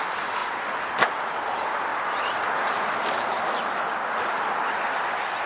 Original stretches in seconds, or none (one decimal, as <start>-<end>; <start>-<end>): 0.0-0.4; 1.2-1.9; 4.8-5.5